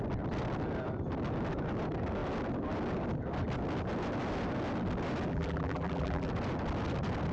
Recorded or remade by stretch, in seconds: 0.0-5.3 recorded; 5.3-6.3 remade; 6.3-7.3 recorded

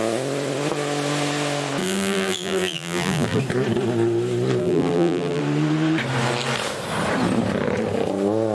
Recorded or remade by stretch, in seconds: 0.0-1.8 recorded; 1.8-3.4 remade; 3.4-4.6 recorded; 4.6-5.4 remade; 5.4-8.5 recorded

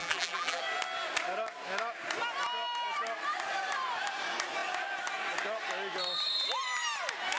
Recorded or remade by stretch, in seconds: 0.0-0.6 remade; 0.6-7.4 recorded

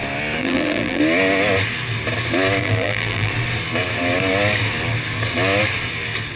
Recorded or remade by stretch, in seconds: 0.0-0.4 recorded; 0.4-1.0 remade; 1.0-2.6 recorded; 2.6-3.3 remade; 3.3-6.4 recorded